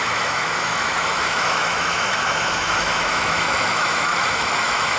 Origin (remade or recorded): remade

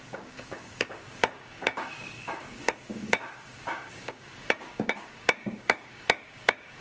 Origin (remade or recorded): remade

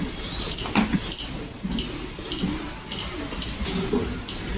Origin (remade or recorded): recorded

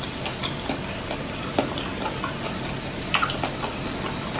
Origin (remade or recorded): recorded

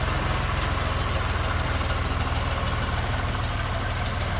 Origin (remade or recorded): recorded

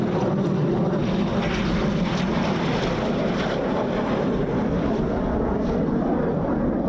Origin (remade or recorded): recorded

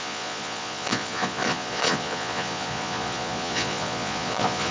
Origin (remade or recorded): remade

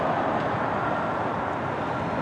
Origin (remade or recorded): recorded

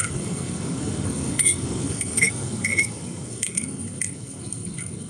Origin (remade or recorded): remade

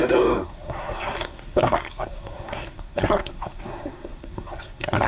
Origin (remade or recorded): remade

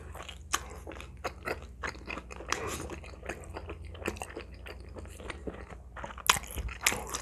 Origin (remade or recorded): recorded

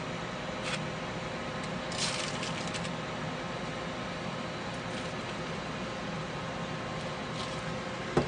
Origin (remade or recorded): recorded